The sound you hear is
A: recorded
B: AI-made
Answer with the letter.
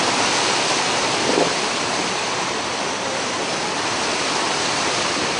B